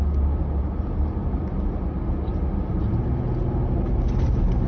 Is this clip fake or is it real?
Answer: real